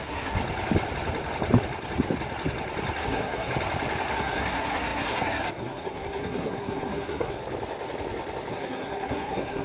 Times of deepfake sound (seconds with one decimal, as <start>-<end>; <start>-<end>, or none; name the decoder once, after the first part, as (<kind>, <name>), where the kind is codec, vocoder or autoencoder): 0.0-0.4 (codec, SNAC); 3.0-3.5; 4.1-7.4; 8.5-9.6